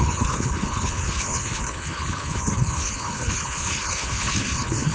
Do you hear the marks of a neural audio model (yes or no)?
yes